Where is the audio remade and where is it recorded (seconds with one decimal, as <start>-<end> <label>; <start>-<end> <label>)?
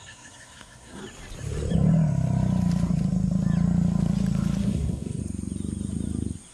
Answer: 0.0-1.0 remade; 1.0-4.6 recorded; 4.6-5.2 remade; 5.2-6.5 recorded